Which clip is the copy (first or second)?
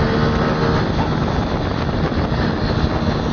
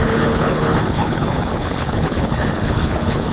second